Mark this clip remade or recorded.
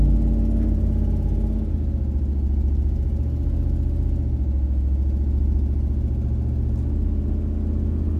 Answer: recorded